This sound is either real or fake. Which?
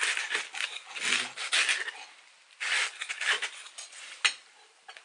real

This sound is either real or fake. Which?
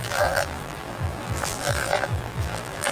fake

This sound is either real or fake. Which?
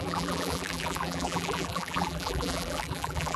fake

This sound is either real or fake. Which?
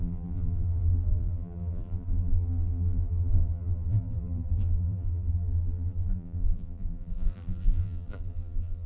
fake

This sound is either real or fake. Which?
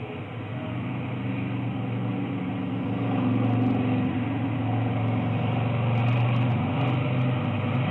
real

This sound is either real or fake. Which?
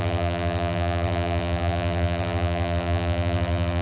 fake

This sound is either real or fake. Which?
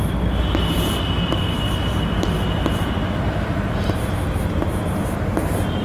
real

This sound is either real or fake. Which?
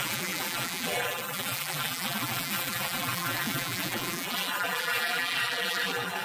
fake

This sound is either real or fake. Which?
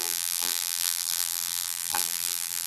fake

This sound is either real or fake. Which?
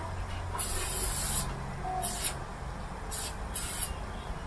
real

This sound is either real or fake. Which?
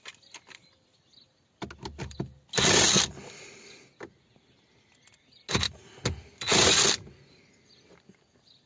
real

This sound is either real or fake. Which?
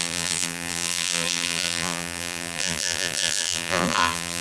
fake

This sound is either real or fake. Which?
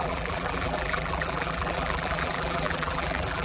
fake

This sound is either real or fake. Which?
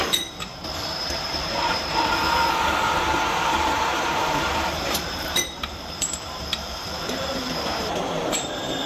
fake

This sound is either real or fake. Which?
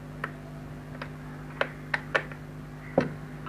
real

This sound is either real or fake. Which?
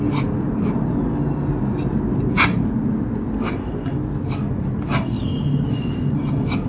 real